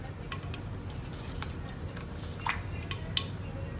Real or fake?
real